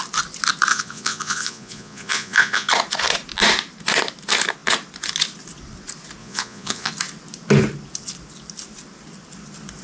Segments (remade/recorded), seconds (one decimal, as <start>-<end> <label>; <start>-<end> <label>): 0.0-0.7 recorded; 0.7-2.7 remade; 2.7-6.2 recorded; 6.2-6.9 remade; 6.9-9.8 recorded